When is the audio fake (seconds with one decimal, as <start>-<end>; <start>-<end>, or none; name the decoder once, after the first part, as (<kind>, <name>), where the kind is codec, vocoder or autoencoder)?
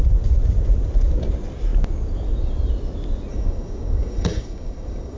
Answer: 3.3-5.2 (codec, DAC)